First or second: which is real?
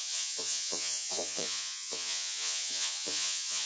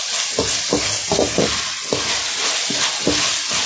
second